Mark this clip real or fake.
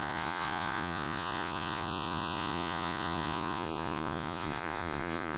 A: fake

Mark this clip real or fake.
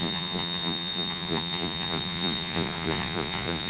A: fake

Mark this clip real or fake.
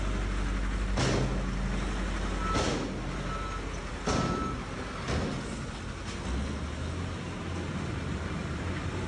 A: real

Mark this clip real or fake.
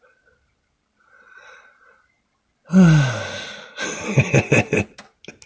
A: real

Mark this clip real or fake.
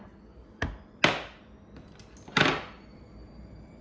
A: real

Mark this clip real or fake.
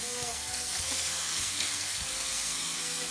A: fake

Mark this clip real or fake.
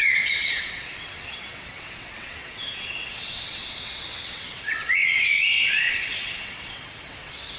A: fake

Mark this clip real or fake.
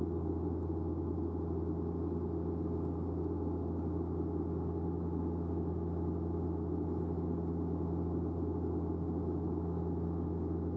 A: real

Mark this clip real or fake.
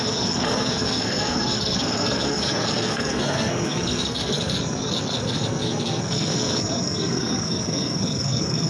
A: fake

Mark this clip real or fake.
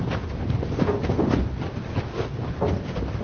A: real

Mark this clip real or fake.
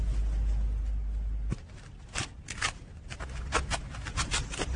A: real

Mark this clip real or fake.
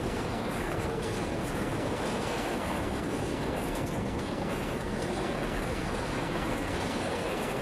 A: fake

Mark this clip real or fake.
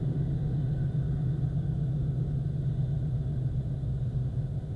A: real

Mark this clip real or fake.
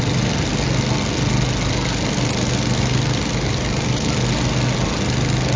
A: real